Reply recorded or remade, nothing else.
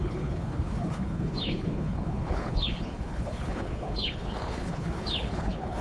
remade